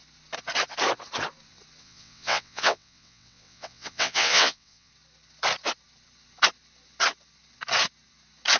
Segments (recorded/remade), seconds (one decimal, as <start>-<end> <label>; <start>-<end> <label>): 0.0-1.8 recorded; 1.8-4.9 remade; 4.9-8.6 recorded